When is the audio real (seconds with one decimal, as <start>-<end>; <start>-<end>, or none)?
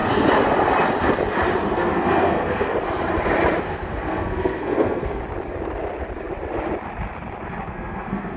0.0-1.7; 2.7-3.6; 5.2-7.6